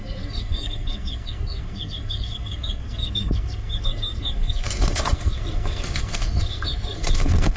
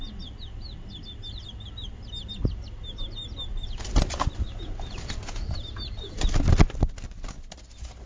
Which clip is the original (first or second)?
second